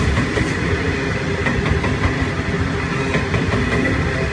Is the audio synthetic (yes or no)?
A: no